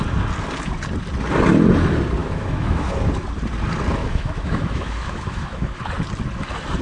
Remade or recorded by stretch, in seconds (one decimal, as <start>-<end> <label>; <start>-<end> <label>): 0.0-2.2 recorded; 2.2-2.9 remade; 2.9-4.0 recorded; 4.0-5.8 remade; 5.8-6.8 recorded